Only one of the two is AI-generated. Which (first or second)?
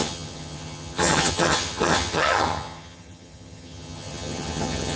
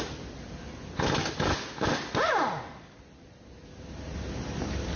first